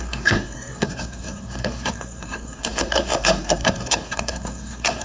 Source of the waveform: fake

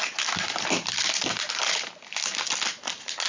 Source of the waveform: real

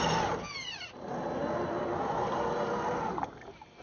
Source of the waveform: real